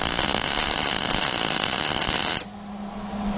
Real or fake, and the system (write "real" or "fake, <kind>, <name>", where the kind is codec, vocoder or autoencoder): real